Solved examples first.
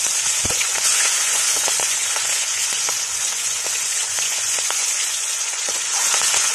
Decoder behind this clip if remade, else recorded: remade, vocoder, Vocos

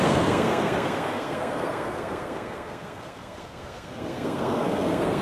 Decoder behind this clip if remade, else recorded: remade, codec, SNAC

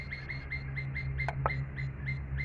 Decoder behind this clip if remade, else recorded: recorded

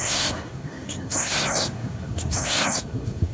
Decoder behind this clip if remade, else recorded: remade, codec, SNAC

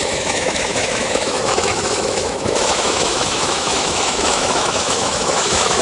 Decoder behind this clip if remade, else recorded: remade, autoencoder, DAC-VAE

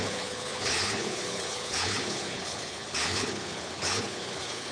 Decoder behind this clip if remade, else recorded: remade, codec, HILCodec